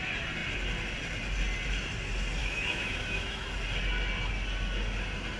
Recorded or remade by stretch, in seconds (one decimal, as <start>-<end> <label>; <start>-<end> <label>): 0.0-2.4 recorded; 2.4-3.5 remade; 3.5-5.4 recorded